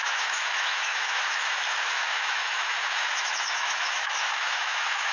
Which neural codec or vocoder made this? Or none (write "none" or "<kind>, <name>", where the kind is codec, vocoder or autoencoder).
autoencoder, DAC-VAE